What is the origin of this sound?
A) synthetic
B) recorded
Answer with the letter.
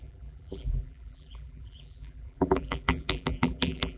A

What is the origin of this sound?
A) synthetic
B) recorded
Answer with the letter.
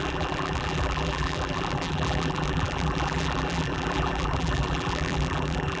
A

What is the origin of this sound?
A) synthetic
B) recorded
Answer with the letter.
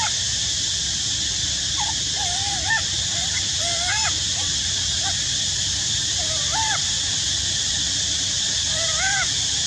A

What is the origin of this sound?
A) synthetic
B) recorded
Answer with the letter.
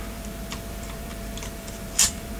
A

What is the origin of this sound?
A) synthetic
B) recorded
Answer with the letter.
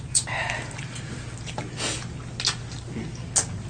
B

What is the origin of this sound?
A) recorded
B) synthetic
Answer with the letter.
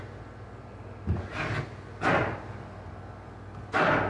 A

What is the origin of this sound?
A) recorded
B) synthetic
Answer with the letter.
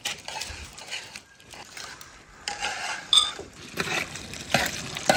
B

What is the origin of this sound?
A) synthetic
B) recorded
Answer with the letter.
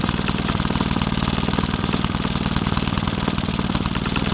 B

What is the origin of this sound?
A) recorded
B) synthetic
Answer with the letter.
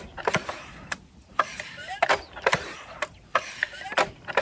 B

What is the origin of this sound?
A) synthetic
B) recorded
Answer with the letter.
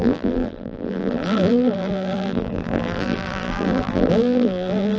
A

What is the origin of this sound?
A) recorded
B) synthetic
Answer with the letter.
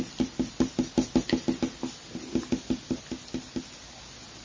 A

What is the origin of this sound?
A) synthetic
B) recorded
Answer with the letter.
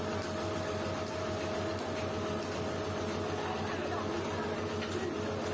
B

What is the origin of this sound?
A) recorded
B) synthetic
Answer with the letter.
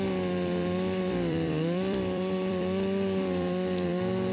B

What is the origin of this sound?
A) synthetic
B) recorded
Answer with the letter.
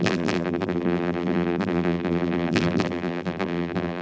A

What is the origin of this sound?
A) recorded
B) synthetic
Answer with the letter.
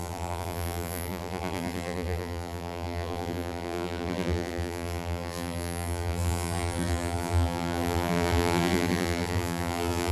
B